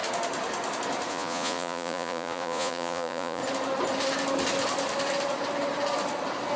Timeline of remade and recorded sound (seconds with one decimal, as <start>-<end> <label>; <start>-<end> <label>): 0.0-1.1 recorded; 1.1-3.4 remade; 3.4-6.6 recorded

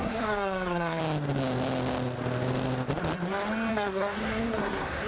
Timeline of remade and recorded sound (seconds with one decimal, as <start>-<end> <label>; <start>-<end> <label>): 0.0-1.0 remade; 1.0-3.7 recorded; 3.7-5.1 remade

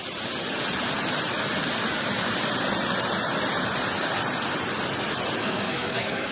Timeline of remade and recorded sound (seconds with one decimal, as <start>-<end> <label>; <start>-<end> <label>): 0.0-5.4 recorded; 5.4-6.3 remade

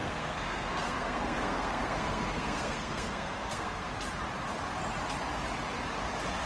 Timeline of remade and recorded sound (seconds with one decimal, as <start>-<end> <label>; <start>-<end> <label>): 0.0-3.9 remade; 3.9-6.5 recorded

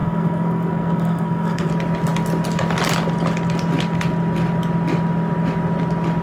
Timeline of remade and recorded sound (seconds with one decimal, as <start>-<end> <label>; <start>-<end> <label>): 0.0-1.7 remade; 1.7-6.2 recorded